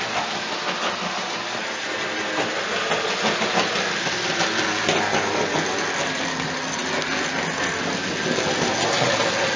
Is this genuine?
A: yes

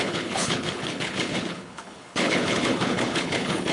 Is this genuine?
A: no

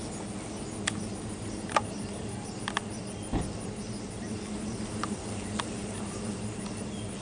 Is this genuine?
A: yes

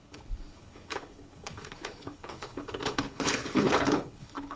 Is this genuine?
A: no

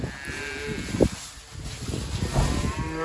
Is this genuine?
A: yes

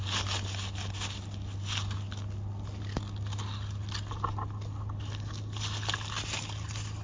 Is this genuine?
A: yes